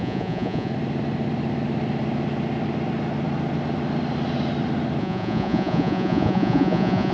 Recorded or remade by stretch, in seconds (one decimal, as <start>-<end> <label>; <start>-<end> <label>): 0.0-0.7 remade; 0.7-5.0 recorded; 5.0-7.1 remade

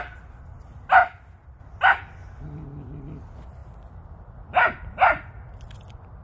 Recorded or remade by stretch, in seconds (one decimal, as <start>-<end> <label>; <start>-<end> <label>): 0.0-6.2 recorded

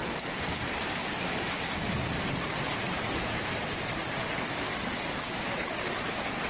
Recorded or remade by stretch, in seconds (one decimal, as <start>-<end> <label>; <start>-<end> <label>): 0.0-3.9 remade; 3.9-4.9 recorded; 4.9-5.4 remade; 5.4-6.5 recorded

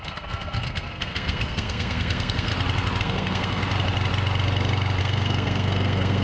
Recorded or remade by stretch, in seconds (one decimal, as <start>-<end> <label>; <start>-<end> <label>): 0.0-2.5 remade; 2.5-3.0 recorded; 3.0-3.6 remade; 3.6-5.0 recorded; 5.0-6.2 remade

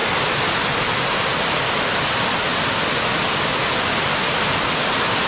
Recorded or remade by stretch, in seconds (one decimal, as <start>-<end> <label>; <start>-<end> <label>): 0.0-5.3 recorded

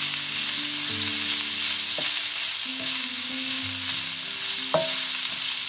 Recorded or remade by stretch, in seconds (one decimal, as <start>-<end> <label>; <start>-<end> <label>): 0.0-2.7 recorded; 2.7-3.6 remade; 3.6-5.7 recorded